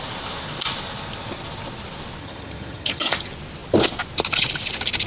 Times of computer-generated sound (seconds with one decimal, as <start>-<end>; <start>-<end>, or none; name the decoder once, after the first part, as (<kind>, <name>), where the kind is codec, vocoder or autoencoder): 2.2-3.1 (vocoder, HiFi-GAN)